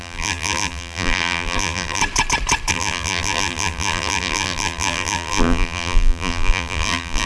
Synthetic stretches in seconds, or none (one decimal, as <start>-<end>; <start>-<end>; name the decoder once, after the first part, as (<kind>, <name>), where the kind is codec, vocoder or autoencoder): 0.0-2.0 (vocoder, BigVGAN v2); 2.7-7.3